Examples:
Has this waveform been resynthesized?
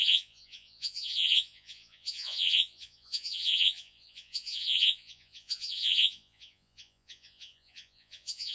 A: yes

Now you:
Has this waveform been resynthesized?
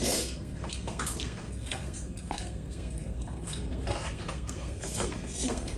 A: yes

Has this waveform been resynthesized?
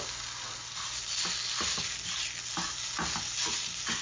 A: no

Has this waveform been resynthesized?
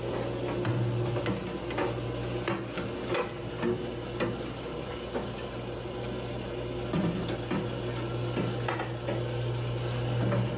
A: no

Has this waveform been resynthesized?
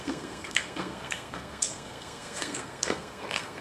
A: yes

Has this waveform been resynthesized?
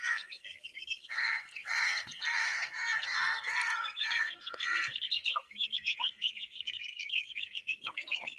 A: yes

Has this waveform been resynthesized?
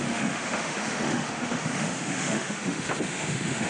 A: yes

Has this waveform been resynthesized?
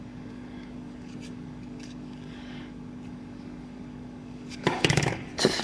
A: yes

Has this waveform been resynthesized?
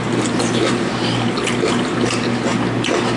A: no